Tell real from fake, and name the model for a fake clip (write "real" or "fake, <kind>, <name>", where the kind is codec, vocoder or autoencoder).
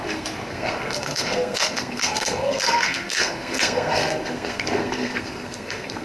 fake, codec, SNAC